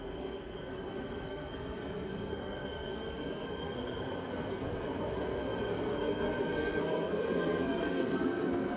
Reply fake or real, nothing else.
fake